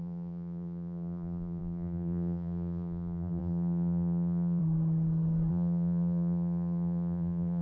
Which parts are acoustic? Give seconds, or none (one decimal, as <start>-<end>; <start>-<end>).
4.6-5.5